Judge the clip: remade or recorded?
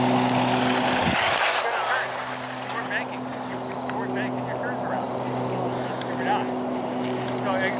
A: recorded